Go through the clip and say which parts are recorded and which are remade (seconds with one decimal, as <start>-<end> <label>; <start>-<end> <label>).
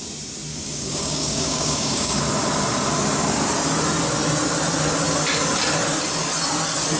0.0-0.5 recorded; 0.5-2.2 remade; 2.2-7.0 recorded